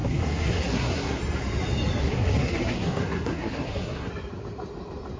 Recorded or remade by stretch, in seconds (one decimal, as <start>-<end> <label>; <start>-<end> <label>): 0.0-1.2 remade; 1.2-2.0 recorded; 2.0-4.1 remade; 4.1-5.2 recorded

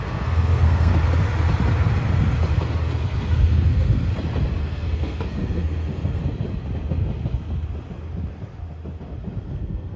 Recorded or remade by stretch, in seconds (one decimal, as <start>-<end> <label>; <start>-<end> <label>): 0.0-0.9 remade; 0.9-3.0 recorded; 3.0-4.1 remade; 4.1-4.6 recorded; 4.6-6.2 remade; 6.2-9.4 recorded; 9.4-10.0 remade

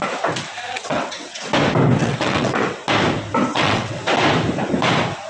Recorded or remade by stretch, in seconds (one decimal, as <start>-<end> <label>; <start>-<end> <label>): 0.0-0.8 recorded; 0.8-1.4 remade; 1.4-2.0 recorded; 2.0-2.8 remade; 2.8-3.5 recorded; 3.5-4.0 remade; 4.0-5.3 recorded

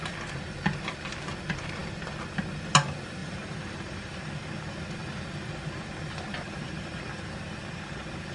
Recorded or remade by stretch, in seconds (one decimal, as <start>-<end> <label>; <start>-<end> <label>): 0.0-3.2 recorded; 3.2-4.3 remade; 4.3-8.3 recorded

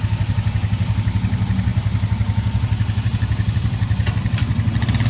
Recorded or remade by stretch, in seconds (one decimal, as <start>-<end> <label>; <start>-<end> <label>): 0.0-5.1 recorded